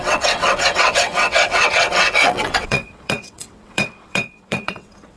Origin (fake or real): fake